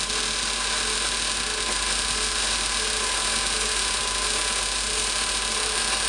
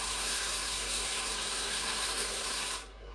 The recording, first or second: first